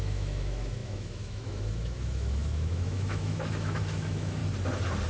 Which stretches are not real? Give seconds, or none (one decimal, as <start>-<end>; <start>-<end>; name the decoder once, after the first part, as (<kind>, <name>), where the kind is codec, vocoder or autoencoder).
0.0-4.4 (autoencoder, DAC-VAE)